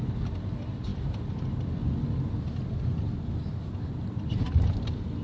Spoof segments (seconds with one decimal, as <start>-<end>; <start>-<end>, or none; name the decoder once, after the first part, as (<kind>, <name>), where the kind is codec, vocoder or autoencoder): none